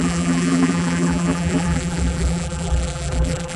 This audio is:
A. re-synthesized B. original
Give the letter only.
A